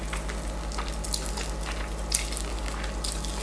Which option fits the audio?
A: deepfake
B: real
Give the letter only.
B